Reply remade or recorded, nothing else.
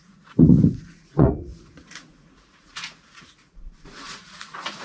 remade